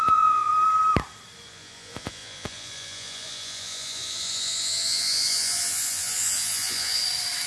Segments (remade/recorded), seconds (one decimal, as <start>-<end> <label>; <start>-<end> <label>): 0.0-0.5 remade; 0.5-1.5 recorded; 1.5-7.0 remade; 7.0-7.5 recorded